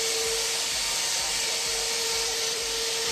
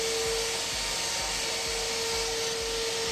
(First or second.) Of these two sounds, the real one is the second